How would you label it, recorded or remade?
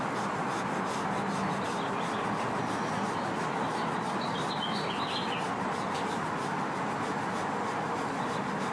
recorded